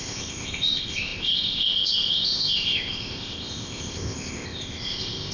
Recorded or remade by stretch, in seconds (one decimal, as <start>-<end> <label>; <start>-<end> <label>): 0.0-5.3 remade

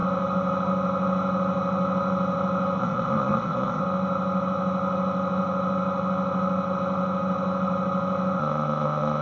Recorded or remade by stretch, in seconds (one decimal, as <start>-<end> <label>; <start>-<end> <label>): 0.0-2.8 recorded; 2.8-3.8 remade; 3.8-8.4 recorded; 8.4-9.2 remade